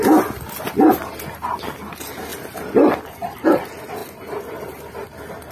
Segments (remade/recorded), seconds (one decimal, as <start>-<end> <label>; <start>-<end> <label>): 0.0-2.3 recorded; 2.3-3.6 remade; 3.6-5.5 recorded